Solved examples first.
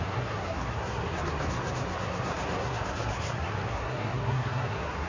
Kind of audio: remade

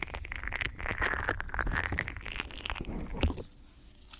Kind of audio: recorded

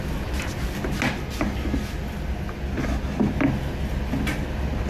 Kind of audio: recorded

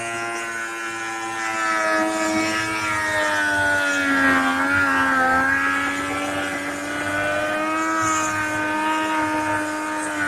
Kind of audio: recorded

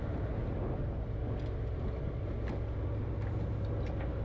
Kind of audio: recorded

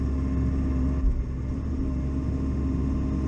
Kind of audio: recorded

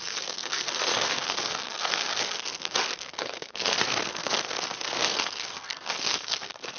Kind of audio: remade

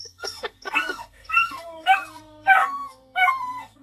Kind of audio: remade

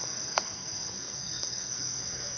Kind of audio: remade